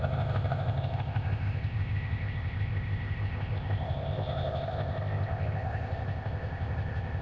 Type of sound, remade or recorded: remade